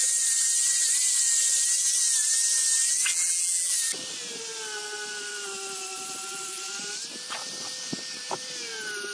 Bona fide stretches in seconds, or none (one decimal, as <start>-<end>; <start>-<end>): 0.0-3.1; 3.7-9.1